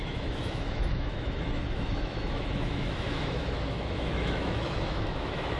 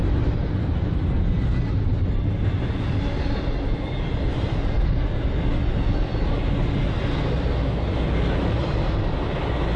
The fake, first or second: first